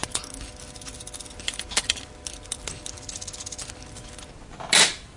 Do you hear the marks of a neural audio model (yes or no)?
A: no